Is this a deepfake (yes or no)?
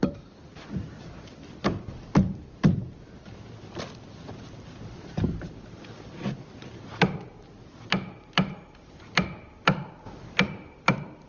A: yes